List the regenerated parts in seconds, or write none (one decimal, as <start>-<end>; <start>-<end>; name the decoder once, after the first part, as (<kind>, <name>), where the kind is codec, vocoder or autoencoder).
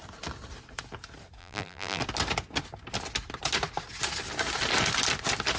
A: 1.4-2.0 (vocoder, BigVGAN v2)